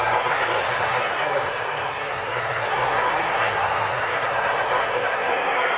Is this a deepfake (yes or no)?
yes